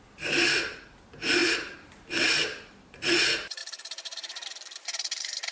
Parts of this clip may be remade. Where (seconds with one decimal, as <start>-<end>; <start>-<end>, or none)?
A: 0.0-5.5